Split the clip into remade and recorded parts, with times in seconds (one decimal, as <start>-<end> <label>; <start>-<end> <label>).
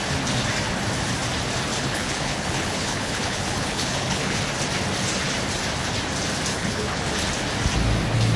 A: 0.0-1.7 recorded; 1.7-4.4 remade; 4.4-6.5 recorded; 6.5-7.0 remade; 7.0-8.4 recorded